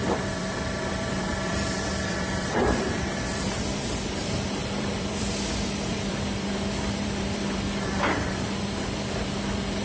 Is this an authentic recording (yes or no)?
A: no